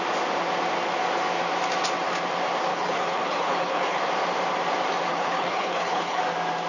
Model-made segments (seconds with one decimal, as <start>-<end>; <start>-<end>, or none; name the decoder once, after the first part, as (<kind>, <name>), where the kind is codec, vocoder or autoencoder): 2.7-4.0 (codec, HILCodec); 5.1-6.2